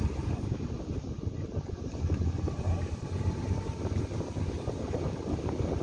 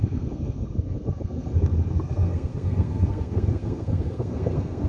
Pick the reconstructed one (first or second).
second